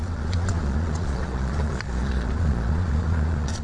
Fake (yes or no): yes